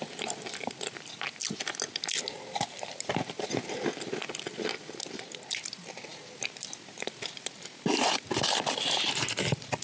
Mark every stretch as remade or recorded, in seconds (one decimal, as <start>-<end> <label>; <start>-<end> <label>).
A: 0.0-9.8 recorded

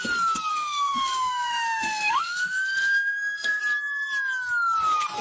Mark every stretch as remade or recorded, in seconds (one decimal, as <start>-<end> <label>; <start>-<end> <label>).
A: 0.0-0.5 recorded; 0.5-3.6 remade; 3.6-5.2 recorded

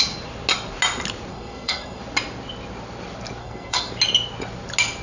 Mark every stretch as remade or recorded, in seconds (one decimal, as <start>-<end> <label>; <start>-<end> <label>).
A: 0.0-1.3 recorded; 1.3-2.0 remade; 2.0-3.4 recorded; 3.4-3.9 remade; 3.9-5.0 recorded

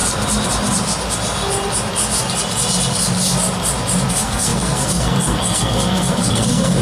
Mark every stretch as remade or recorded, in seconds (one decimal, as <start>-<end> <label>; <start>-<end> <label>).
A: 0.0-4.1 recorded; 4.1-6.8 remade

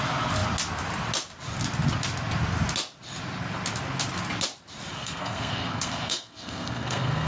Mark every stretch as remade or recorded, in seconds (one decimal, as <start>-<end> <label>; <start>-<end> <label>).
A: 0.0-4.9 recorded; 4.9-7.3 remade